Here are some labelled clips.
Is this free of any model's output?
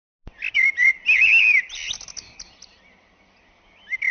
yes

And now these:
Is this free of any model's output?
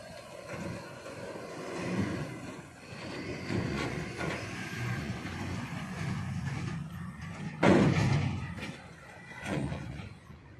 no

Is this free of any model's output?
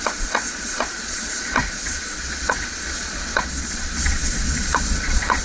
no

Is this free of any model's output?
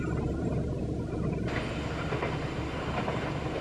yes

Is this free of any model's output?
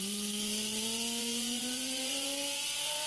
no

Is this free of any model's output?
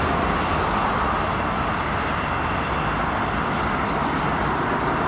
yes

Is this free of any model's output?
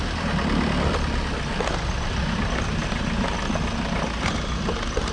yes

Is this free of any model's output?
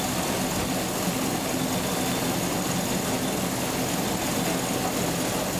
yes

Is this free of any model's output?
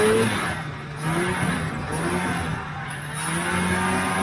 yes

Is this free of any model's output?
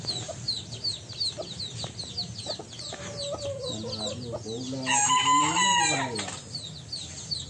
yes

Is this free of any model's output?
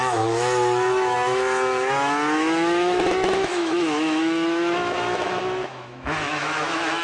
no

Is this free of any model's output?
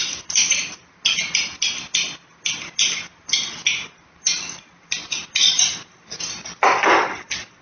yes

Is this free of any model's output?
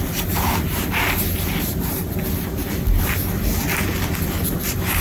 yes